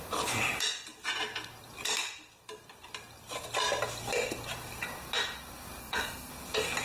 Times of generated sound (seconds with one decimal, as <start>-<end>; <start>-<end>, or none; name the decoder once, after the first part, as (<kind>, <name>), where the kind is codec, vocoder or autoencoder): 5.8-6.3 (codec, SNAC)

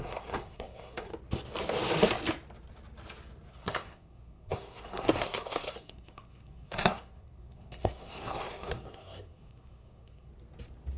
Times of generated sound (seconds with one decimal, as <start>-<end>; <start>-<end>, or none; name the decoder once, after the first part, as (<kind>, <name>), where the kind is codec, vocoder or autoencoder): 0.0-1.1 (codec, SNAC); 3.5-10.3

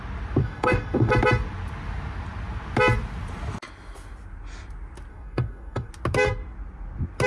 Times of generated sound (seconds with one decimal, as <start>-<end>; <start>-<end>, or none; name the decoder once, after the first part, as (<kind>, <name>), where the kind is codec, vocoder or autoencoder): 0.4-1.1 (codec, DAC); 5.1-5.9

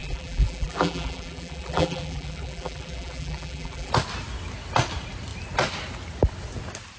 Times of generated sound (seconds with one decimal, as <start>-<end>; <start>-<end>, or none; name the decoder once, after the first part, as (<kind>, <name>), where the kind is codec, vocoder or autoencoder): 0.0-3.9 (vocoder, BigVGAN v2)

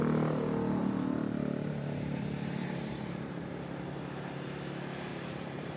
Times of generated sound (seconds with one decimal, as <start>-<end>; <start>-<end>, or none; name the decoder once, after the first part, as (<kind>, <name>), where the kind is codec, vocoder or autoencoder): 0.8-3.4 (vocoder, BigVGAN v2); 5.1-5.8

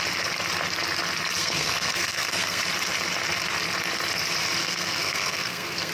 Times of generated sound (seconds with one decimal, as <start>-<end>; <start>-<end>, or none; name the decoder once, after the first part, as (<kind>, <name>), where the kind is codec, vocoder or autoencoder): 1.4-2.6 (codec, SNAC); 4.6-5.9

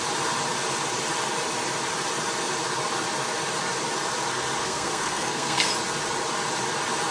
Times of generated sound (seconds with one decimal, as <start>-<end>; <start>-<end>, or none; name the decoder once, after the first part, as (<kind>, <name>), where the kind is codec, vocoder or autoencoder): 4.6-5.7 (codec, SNAC)